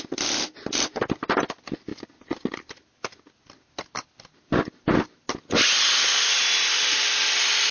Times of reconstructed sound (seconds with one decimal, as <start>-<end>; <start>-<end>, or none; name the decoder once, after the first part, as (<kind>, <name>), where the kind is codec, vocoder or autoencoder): none